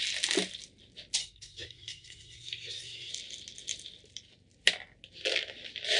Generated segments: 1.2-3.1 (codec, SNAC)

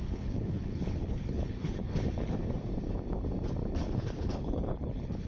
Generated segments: 0.0-2.4 (codec, HILCodec); 3.7-5.3

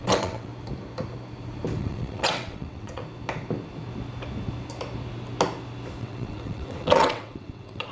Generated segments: 0.0-0.5 (vocoder, WaveNeXt); 1.8-3.0; 6.0-7.9

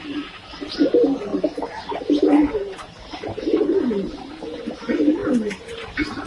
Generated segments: none

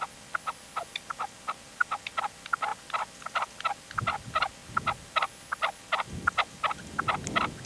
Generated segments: none

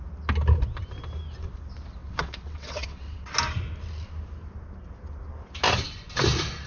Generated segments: 2.0-3.3 (vocoder, WaveNeXt)